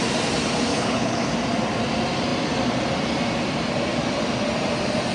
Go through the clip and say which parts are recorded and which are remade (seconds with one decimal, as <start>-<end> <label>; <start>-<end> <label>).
0.0-0.7 recorded; 0.7-1.2 remade; 1.2-5.1 recorded